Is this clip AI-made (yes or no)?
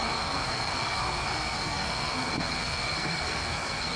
yes